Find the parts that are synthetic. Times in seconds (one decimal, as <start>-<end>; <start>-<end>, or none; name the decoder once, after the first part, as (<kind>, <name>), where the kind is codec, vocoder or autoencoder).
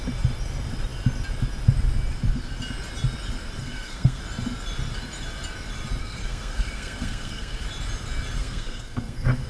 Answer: 3.6-4.2 (codec, SNAC); 6.0-7.6; 8.4-9.5